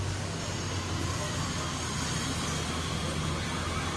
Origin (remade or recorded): recorded